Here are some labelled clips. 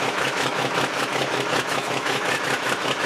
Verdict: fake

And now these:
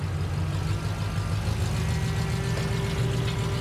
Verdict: real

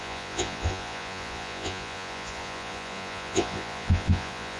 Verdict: fake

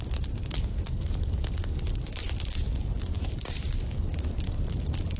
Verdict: real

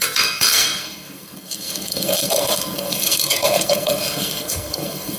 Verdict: fake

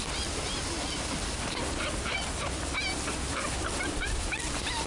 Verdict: real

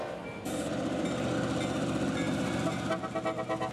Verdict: real